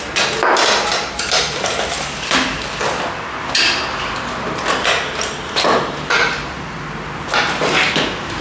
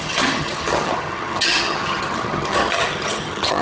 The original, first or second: first